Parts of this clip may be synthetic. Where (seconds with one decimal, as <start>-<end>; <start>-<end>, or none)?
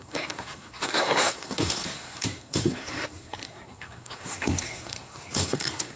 0.0-6.0